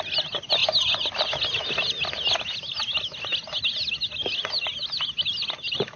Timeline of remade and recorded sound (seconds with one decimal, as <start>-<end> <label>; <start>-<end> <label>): 0.0-6.0 recorded

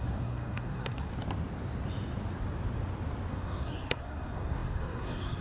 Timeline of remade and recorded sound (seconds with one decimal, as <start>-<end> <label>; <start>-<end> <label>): 0.0-1.1 remade; 1.1-3.3 recorded; 3.3-5.4 remade

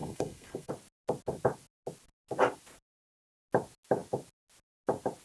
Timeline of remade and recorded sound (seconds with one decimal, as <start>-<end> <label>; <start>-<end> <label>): 0.0-0.7 remade; 0.7-5.2 recorded

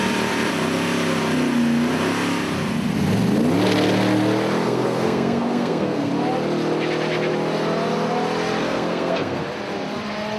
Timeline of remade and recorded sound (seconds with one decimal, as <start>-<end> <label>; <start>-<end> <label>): 0.0-4.6 recorded; 4.6-6.1 remade; 6.1-8.6 recorded; 8.6-9.4 remade; 9.4-10.4 recorded

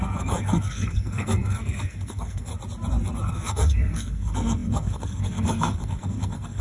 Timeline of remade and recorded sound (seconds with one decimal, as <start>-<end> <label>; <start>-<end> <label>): 0.0-2.5 remade; 2.5-3.3 recorded; 3.3-6.6 remade

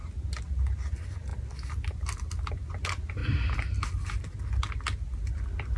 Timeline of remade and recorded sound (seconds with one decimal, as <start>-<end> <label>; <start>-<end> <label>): 0.0-5.8 recorded